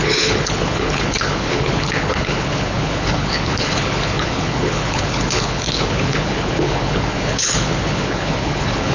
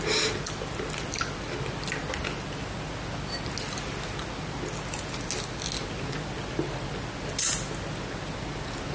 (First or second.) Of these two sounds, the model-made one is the first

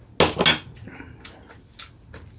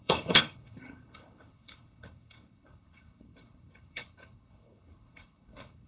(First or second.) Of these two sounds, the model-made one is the second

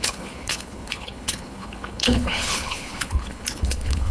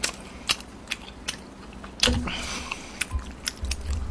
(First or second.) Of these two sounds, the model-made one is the first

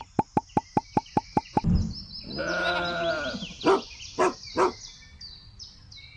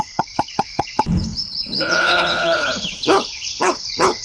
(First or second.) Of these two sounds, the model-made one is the second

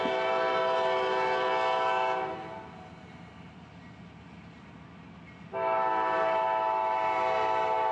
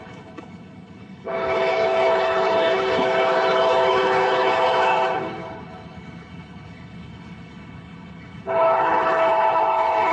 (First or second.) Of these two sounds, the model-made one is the second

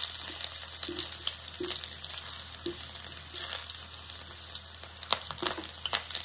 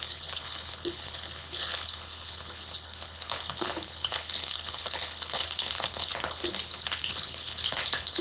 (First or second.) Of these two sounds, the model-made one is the second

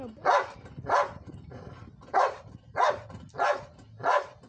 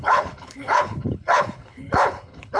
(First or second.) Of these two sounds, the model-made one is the second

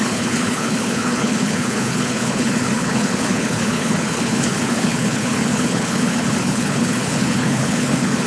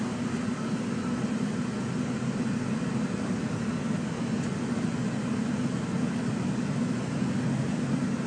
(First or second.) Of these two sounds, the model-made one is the first